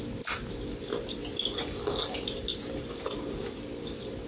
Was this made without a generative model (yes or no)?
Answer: yes